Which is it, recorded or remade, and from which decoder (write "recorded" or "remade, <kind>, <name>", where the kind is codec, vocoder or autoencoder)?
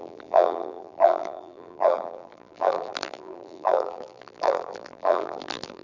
remade, vocoder, BigVGAN v2